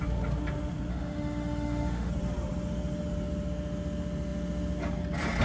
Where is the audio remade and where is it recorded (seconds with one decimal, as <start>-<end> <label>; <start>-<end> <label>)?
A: 0.0-0.9 recorded; 0.9-2.1 remade; 2.1-5.4 recorded